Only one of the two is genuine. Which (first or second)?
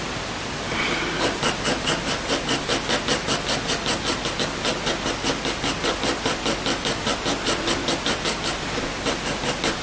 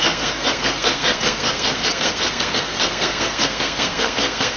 first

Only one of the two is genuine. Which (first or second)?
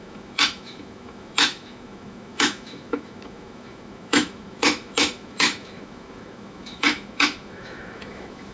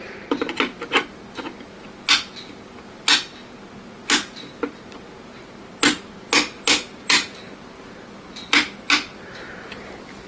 second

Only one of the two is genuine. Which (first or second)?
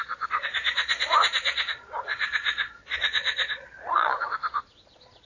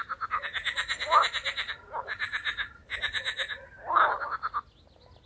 second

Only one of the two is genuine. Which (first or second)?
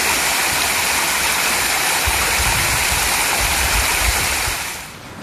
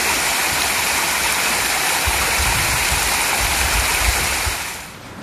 second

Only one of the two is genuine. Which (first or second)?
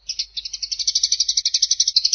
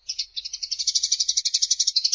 first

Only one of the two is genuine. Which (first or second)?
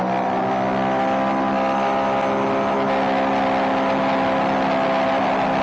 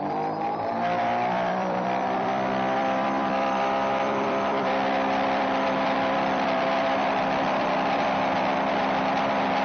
first